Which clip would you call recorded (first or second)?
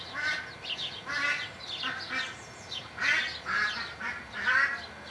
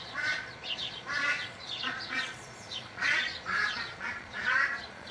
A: first